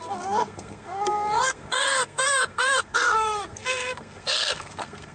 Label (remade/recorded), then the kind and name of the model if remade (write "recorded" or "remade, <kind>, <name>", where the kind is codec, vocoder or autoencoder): remade, codec, SNAC